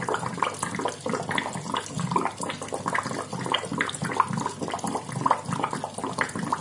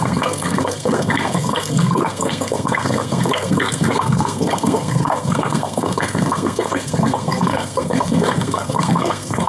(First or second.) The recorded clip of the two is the first